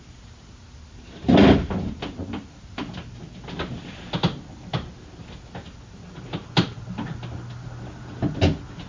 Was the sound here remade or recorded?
recorded